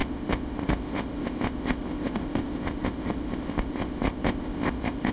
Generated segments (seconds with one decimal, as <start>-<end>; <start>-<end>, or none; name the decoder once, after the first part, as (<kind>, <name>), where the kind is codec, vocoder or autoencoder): 0.0-5.1 (codec, ZipCodec)